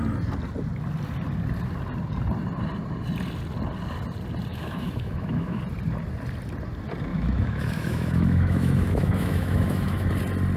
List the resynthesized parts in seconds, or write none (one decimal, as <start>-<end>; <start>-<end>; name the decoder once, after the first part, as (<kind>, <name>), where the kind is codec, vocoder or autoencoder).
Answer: 4.5-5.6 (autoencoder, DAC-VAE); 7.1-10.1